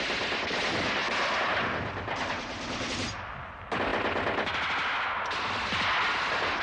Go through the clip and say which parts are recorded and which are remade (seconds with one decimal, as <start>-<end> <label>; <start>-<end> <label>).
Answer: 0.0-6.6 recorded